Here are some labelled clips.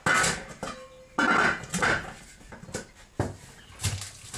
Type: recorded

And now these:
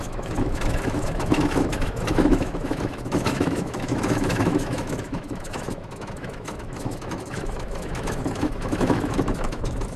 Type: remade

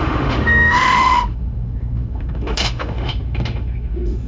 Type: remade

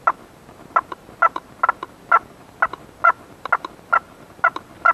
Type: recorded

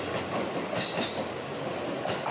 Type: recorded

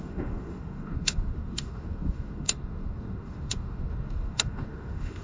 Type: remade